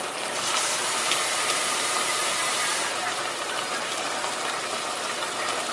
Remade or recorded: remade